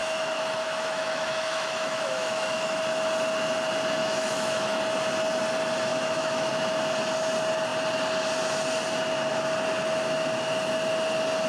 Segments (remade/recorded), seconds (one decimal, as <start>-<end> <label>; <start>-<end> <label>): 0.0-2.8 remade; 2.8-4.0 recorded; 4.0-4.8 remade; 4.8-5.9 recorded; 5.9-6.5 remade; 6.5-11.5 recorded